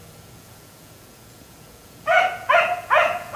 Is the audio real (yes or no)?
no